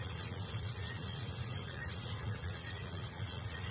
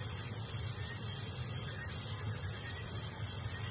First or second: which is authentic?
second